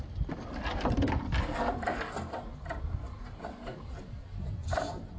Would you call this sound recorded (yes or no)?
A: no